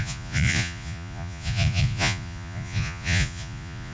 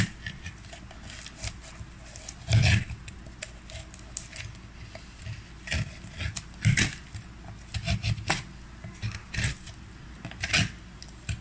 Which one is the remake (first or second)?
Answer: first